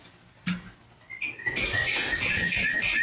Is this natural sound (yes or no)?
yes